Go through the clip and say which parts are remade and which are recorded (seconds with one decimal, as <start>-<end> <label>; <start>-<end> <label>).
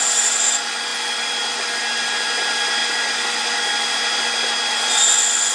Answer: 0.0-5.5 recorded